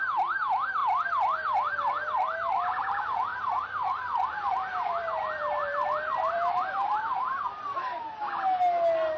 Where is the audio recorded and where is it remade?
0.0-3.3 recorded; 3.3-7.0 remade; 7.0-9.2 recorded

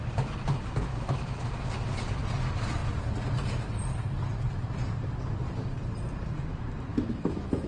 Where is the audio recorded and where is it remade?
0.0-0.9 recorded; 0.9-1.5 remade; 1.5-6.9 recorded; 6.9-7.7 remade

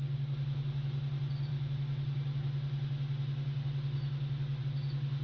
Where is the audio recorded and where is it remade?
0.0-5.2 recorded

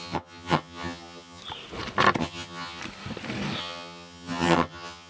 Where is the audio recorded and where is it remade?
0.0-1.4 remade; 1.4-2.2 recorded; 2.2-2.8 remade; 2.8-3.6 recorded; 3.6-5.1 remade

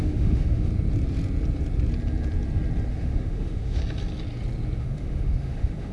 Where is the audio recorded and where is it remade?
0.0-0.7 remade; 0.7-2.9 recorded; 2.9-3.8 remade; 3.8-4.8 recorded; 4.8-5.9 remade

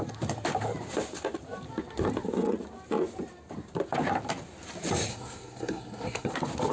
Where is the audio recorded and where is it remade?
0.0-5.1 recorded; 5.1-6.3 remade; 6.3-6.7 recorded

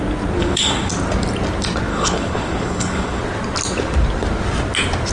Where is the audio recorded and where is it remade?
0.0-0.4 recorded; 0.4-0.9 remade; 0.9-1.9 recorded; 1.9-3.2 remade; 3.2-5.1 recorded

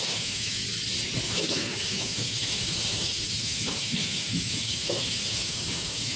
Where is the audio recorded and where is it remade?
0.0-0.6 remade; 0.6-1.2 recorded; 1.2-6.2 remade